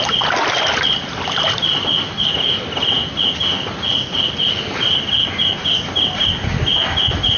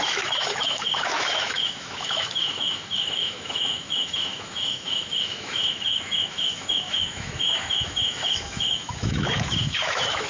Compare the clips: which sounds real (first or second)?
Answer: first